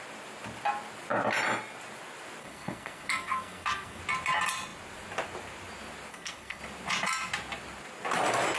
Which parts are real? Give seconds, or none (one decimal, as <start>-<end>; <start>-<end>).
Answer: 0.0-2.4; 4.0-6.1; 6.6-8.6